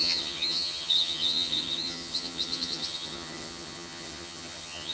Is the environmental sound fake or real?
fake